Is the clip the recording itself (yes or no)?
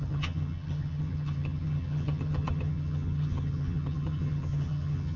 no